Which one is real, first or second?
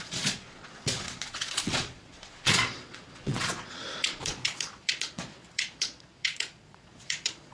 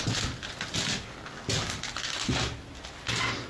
second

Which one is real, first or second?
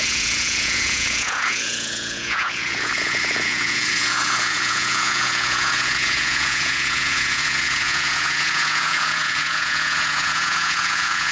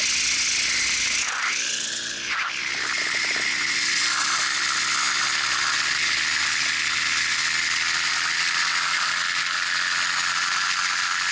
second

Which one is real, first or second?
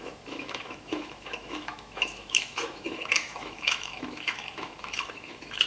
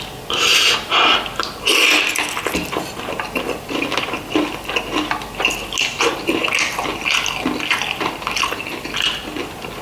second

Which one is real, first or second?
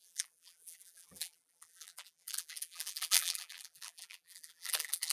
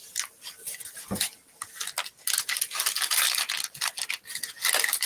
second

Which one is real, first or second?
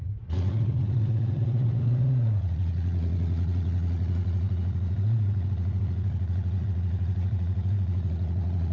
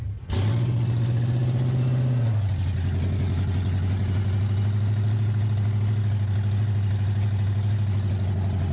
second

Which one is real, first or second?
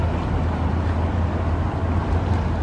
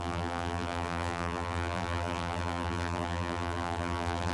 first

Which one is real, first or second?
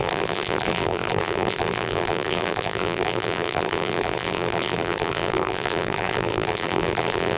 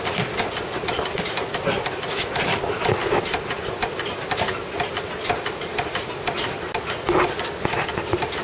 second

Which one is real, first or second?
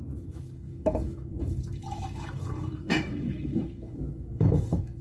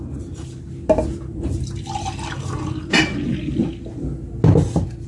second